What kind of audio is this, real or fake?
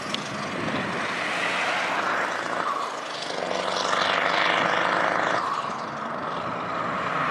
real